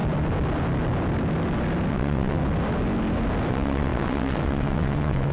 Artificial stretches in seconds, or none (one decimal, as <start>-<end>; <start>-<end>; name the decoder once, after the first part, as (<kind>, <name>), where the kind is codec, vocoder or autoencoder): 1.9-2.4 (vocoder, WaveNeXt); 3.5-5.3